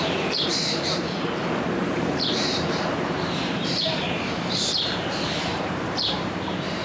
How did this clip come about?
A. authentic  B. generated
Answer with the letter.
B